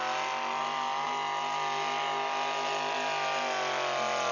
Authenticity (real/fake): real